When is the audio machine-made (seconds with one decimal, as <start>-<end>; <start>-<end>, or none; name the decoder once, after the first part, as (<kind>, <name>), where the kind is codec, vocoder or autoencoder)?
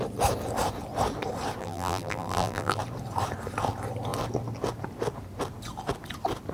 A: 1.6-2.8 (vocoder, BigVGAN v2)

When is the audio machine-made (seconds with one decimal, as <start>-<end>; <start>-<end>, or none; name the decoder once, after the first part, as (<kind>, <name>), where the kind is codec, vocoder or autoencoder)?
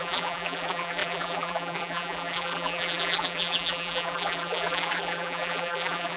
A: 0.0-6.2 (vocoder, BigVGAN v2)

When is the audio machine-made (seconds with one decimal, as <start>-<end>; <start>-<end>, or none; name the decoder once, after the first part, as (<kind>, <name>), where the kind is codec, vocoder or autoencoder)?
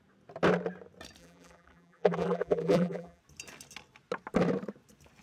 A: 1.2-3.2 (vocoder, BigVGAN v2)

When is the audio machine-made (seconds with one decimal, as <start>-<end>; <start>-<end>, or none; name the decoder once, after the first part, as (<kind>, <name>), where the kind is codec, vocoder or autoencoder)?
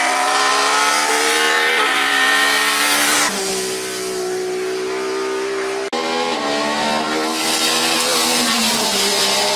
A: 0.0-3.5 (vocoder, BigVGAN v2); 7.4-9.6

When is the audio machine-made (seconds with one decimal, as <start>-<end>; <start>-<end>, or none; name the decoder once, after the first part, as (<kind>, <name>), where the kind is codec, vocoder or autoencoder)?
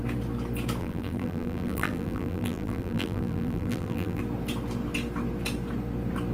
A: 0.8-4.2 (vocoder, BigVGAN v2)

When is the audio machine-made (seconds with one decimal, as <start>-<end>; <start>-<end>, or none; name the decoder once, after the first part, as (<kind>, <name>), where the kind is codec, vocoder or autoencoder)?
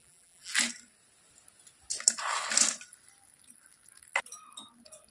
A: 0.0-0.5 (vocoder, BigVGAN v2)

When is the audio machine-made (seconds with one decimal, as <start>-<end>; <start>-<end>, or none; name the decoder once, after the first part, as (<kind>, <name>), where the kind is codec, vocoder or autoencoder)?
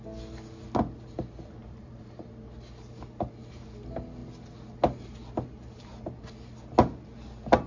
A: 1.6-2.3 (vocoder, BigVGAN v2)